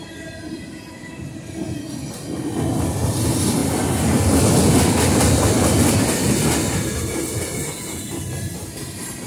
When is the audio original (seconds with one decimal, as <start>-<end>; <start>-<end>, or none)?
0.0-9.3